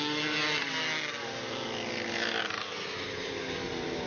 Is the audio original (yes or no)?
yes